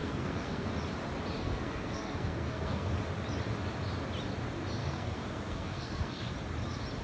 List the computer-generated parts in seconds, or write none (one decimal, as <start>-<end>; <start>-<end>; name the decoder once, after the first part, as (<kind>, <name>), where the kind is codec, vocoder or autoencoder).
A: 0.0-0.7 (codec, SNAC); 1.4-2.9; 4.8-6.3